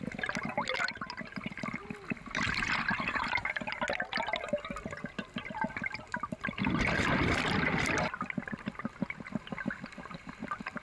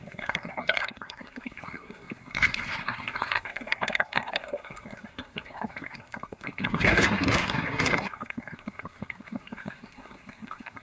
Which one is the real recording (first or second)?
first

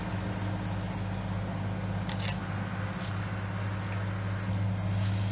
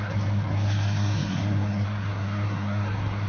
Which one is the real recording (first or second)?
first